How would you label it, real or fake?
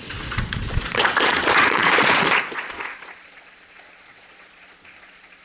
fake